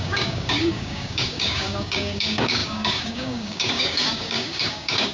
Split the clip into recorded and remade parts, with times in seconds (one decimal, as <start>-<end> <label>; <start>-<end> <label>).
0.0-5.1 remade